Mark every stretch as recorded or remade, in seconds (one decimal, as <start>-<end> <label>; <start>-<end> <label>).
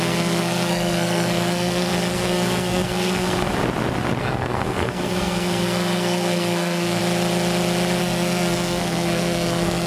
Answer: 0.0-3.5 remade; 3.5-4.2 recorded; 4.2-7.0 remade; 7.0-8.0 recorded; 8.0-9.9 remade